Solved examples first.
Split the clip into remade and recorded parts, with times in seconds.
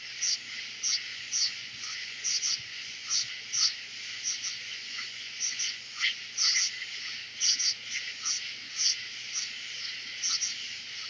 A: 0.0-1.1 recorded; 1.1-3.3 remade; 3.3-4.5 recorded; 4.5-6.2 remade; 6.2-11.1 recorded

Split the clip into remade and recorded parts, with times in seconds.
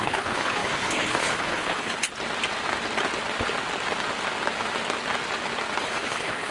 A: 0.0-2.1 remade; 2.1-5.8 recorded; 5.8-6.5 remade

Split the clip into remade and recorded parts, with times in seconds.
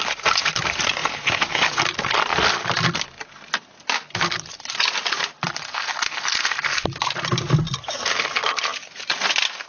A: 0.0-9.7 recorded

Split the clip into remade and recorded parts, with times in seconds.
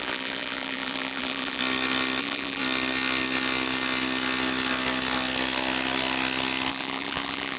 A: 0.0-1.6 remade; 1.6-2.2 recorded; 2.2-2.6 remade; 2.6-6.7 recorded; 6.7-7.6 remade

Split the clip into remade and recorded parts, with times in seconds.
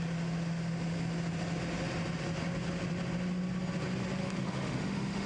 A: 0.0-4.2 recorded; 4.2-5.3 remade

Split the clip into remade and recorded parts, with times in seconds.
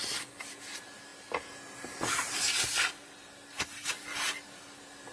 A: 0.0-5.1 recorded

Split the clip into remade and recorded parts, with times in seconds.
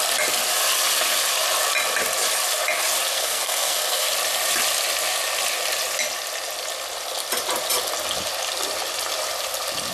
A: 0.0-3.1 recorded; 3.1-4.1 remade; 4.1-9.9 recorded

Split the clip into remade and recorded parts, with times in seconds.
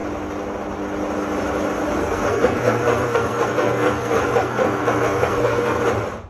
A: 0.0-2.0 recorded; 2.0-5.8 remade; 5.8-6.3 recorded